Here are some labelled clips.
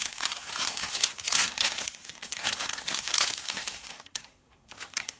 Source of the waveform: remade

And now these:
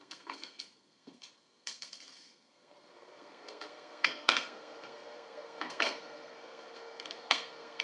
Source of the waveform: remade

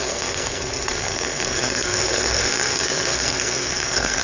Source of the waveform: remade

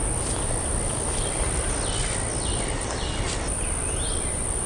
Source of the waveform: recorded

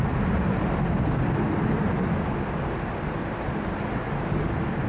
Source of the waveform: recorded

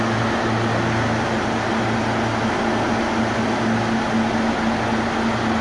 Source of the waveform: recorded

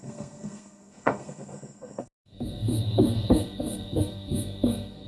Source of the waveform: remade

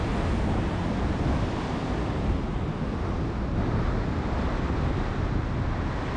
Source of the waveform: recorded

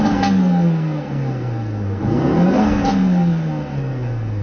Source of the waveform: remade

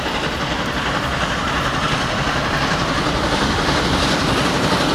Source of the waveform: recorded